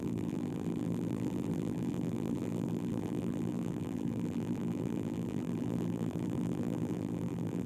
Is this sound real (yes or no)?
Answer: no